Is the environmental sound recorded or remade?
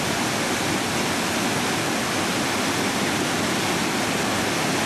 recorded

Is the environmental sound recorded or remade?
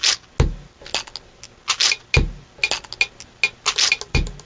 recorded